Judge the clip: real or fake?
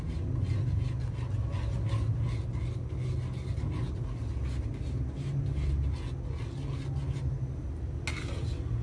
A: real